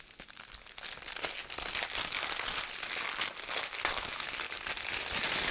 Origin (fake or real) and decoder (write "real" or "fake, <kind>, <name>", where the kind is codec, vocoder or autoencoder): real